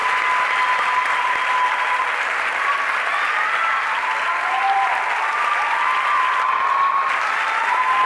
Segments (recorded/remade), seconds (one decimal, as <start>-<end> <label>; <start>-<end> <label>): 0.0-3.1 remade; 3.1-5.1 recorded; 5.1-8.1 remade

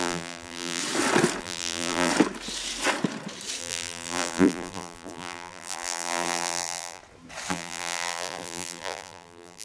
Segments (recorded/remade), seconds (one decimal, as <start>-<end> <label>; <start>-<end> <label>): 0.0-0.8 remade; 0.8-1.4 recorded; 1.4-2.1 remade; 2.1-3.6 recorded; 3.6-7.0 remade; 7.0-7.5 recorded; 7.5-9.6 remade

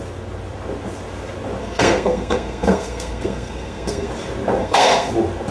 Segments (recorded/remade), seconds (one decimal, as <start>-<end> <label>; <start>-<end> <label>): 0.0-1.6 recorded; 1.6-4.1 remade; 4.1-4.6 recorded; 4.6-5.1 remade; 5.1-5.5 recorded

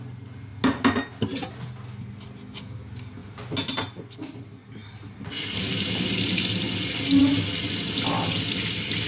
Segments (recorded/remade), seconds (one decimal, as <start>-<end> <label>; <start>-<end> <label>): 0.0-9.1 recorded

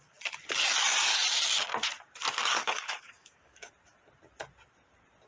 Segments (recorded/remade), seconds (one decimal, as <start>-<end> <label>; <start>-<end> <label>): 0.0-2.4 recorded; 2.4-3.7 remade; 3.7-5.3 recorded